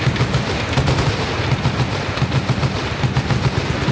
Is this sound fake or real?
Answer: real